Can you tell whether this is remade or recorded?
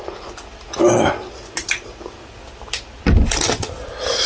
recorded